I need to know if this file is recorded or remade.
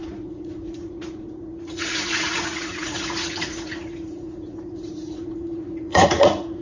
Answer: remade